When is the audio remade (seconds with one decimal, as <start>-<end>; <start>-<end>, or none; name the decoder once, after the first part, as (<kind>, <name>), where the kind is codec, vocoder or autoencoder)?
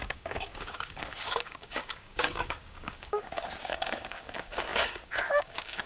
0.0-5.9 (codec, DAC)